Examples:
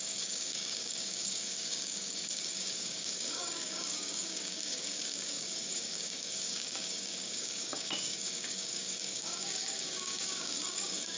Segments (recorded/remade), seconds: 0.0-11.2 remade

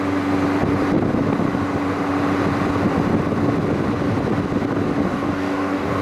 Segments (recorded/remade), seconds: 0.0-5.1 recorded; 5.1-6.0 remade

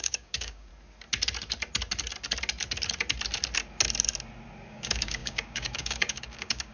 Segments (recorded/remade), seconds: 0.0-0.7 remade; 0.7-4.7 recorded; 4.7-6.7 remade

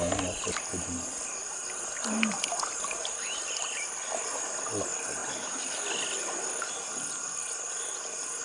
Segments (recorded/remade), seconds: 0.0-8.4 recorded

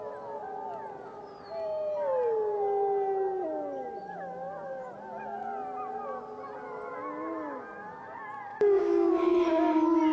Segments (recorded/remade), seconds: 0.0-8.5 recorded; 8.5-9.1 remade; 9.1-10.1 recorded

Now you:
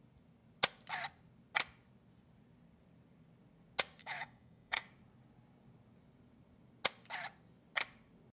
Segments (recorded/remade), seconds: 0.0-4.0 recorded; 4.0-4.9 remade; 4.9-8.3 recorded

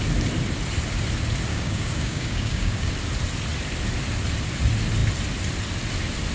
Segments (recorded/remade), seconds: 0.0-1.5 recorded; 1.5-2.9 remade; 2.9-6.3 recorded

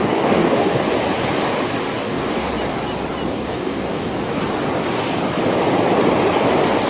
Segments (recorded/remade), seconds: 0.0-0.7 remade; 0.7-2.0 recorded; 2.0-2.5 remade; 2.5-3.3 recorded; 3.3-4.1 remade; 4.1-6.9 recorded